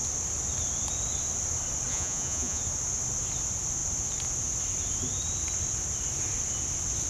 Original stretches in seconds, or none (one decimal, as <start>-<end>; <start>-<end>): 0.0-1.9; 2.6-7.1